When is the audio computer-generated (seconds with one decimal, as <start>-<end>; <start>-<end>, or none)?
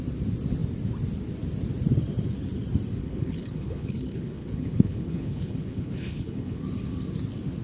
3.0-6.6